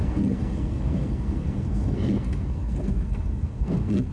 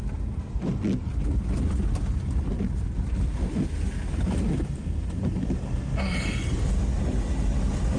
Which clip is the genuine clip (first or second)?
second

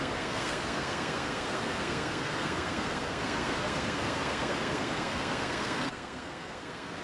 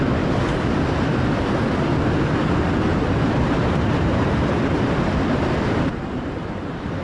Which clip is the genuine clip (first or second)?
second